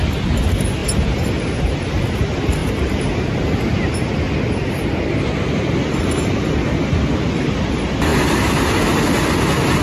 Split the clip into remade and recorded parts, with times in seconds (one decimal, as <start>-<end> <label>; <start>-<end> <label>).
0.0-9.8 recorded